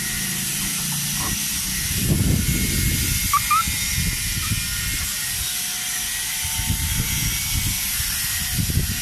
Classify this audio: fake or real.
real